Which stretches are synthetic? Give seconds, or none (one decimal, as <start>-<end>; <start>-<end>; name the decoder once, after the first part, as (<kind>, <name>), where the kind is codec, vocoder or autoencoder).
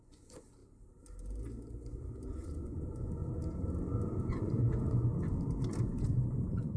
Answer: 0.0-0.6 (vocoder, Vocos); 2.3-3.2; 4.3-5.1; 5.8-6.8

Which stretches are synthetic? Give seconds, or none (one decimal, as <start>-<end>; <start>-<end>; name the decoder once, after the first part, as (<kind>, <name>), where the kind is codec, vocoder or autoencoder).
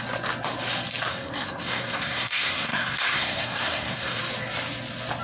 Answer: 1.1-4.2 (codec, SNAC)